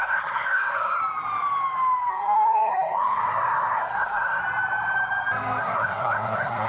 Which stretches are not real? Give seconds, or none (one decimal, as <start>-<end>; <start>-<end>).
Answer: 0.0-1.0; 2.1-4.4; 5.6-6.7